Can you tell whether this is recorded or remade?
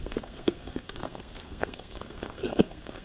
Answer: remade